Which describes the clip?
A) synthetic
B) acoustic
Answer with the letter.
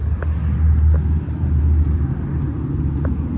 B